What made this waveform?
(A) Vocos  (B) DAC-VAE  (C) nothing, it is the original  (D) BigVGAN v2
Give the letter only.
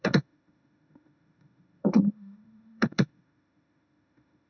B